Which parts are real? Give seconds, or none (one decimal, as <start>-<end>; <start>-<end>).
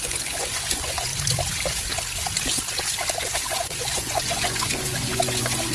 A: 1.1-3.2